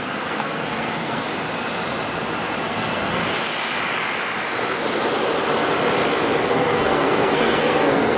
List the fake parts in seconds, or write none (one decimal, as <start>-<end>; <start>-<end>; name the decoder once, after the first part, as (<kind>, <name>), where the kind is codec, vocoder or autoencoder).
0.0-1.3 (codec, SNAC); 2.6-3.2; 6.5-8.2

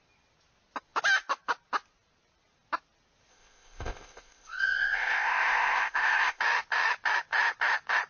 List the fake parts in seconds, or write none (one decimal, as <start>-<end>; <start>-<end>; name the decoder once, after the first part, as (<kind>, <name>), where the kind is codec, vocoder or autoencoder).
3.3-6.4 (codec, ZipCodec)

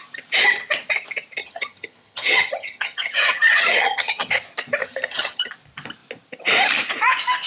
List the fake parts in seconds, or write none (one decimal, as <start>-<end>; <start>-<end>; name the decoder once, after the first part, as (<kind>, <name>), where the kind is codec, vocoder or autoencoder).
1.4-4.3 (vocoder, HiFi-GAN); 4.8-5.5

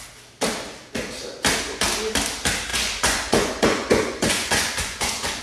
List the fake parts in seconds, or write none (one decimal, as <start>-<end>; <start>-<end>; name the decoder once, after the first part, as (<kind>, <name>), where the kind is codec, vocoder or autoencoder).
2.7-5.4 (vocoder, Vocos)